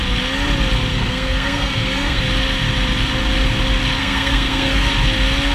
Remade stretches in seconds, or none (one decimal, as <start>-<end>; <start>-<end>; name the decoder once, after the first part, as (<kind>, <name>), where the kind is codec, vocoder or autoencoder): 0.9-2.2 (codec, SNAC); 4.0-4.9